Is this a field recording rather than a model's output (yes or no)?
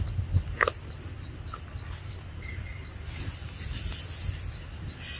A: yes